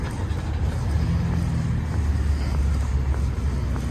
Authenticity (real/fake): real